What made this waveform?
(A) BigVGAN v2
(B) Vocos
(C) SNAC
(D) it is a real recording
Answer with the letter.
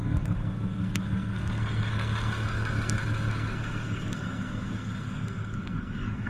C